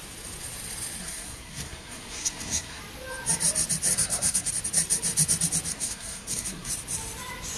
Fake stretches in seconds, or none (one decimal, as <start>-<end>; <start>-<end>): 1.0-2.8; 3.9-4.5; 5.7-6.7